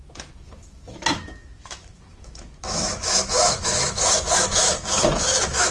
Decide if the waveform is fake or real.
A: fake